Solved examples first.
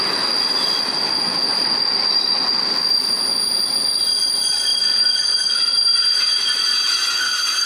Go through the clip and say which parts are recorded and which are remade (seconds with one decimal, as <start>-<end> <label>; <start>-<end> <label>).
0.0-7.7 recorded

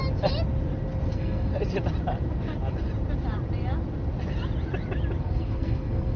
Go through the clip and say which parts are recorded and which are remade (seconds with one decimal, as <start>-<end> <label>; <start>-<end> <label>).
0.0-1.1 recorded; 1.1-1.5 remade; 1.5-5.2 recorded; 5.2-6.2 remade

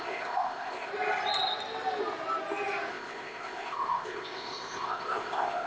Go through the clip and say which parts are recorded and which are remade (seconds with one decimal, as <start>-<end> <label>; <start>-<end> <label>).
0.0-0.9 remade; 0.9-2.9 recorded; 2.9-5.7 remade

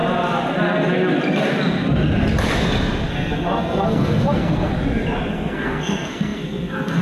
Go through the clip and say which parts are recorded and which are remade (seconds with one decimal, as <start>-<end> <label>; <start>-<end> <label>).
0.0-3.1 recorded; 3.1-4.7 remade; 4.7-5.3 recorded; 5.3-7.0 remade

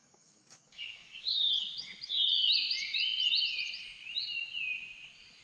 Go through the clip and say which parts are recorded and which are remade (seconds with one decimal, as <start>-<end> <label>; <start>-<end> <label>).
0.0-1.5 remade; 1.5-5.4 recorded